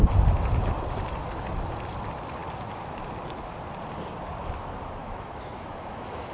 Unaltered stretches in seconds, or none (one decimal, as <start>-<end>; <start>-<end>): 0.0-5.0